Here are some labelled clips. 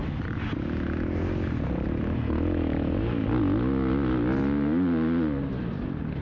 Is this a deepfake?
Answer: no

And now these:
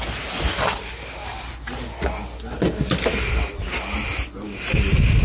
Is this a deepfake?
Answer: no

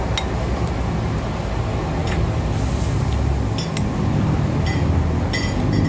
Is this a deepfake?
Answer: no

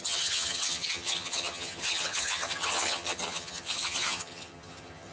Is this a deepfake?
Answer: yes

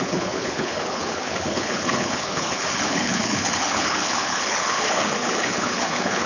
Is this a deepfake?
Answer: yes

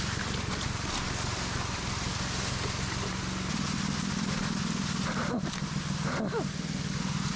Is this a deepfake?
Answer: no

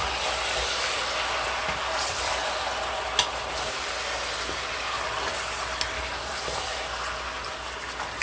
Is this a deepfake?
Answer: no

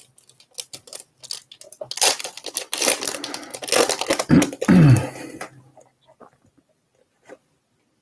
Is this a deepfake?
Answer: no